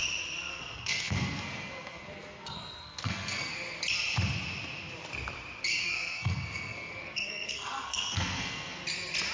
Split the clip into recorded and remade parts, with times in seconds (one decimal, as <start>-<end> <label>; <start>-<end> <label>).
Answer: 0.0-0.5 recorded; 0.5-3.5 remade; 3.5-5.8 recorded; 5.8-8.8 remade; 8.8-9.3 recorded